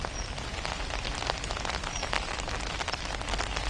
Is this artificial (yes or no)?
no